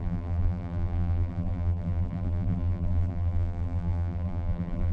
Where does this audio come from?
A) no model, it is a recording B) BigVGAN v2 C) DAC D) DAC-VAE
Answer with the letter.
B